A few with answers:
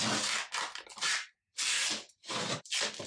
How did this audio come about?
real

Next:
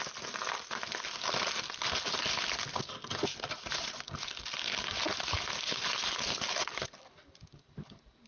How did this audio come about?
real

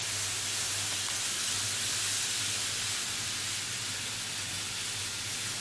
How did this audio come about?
real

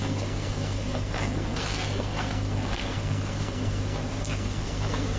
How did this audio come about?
fake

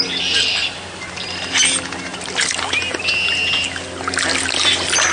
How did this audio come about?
real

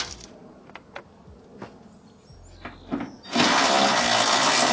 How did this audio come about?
real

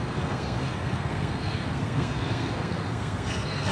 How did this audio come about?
fake